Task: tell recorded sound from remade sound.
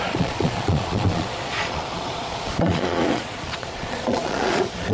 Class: remade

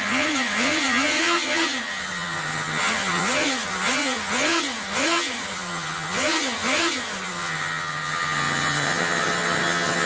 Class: remade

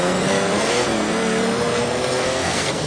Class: remade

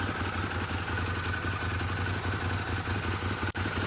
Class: recorded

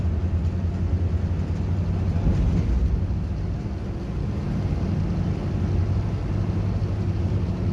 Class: recorded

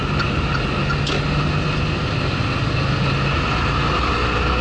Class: recorded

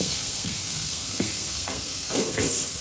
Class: remade